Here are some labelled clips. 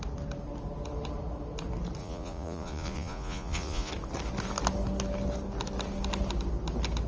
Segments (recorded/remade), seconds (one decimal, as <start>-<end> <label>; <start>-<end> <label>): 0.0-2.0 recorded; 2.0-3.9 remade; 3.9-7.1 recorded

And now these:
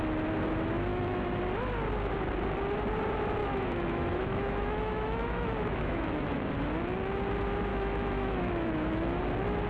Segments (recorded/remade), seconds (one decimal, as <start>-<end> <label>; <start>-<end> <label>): 0.0-0.9 recorded; 0.9-1.4 remade; 1.4-3.4 recorded; 3.4-6.5 remade; 6.5-7.7 recorded; 7.7-9.2 remade; 9.2-9.7 recorded

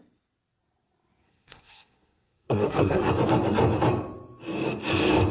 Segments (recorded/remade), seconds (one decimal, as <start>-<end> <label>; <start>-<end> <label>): 0.0-1.2 recorded; 1.2-3.1 remade; 3.1-5.3 recorded

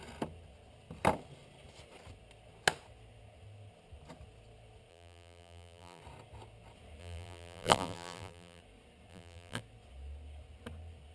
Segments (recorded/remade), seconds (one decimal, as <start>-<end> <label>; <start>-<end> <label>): 0.0-4.9 recorded; 4.9-6.0 remade; 6.0-7.0 recorded; 7.0-8.6 remade; 8.6-9.1 recorded; 9.1-9.6 remade; 9.6-11.1 recorded

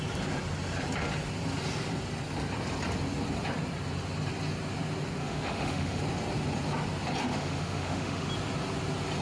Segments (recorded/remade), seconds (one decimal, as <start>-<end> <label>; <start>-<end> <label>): 0.0-5.2 recorded; 5.2-6.0 remade; 6.0-7.3 recorded; 7.3-8.3 remade; 8.3-9.2 recorded